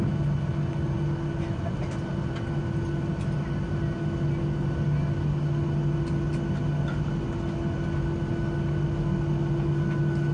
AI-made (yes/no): no